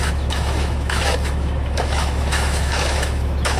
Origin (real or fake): fake